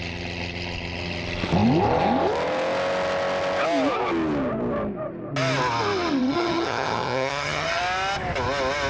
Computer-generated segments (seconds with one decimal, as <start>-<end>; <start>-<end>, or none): 6.2-7.8